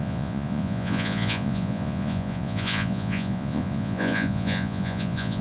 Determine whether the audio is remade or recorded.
remade